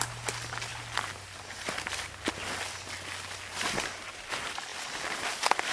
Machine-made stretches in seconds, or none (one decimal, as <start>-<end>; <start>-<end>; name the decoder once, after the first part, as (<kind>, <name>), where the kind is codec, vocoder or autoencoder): 4.7-5.3 (vocoder, BigVGAN v2)